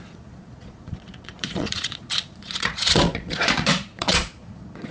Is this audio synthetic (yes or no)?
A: yes